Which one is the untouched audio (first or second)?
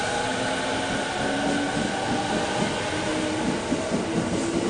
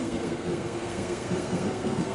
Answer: first